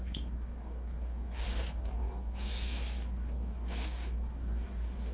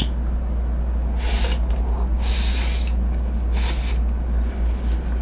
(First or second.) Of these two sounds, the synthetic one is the first